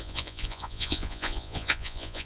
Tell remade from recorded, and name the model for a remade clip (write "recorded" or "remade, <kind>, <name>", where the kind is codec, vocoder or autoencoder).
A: remade, vocoder, Vocos